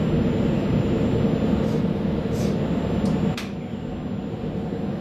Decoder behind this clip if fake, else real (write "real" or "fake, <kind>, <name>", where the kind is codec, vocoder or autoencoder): real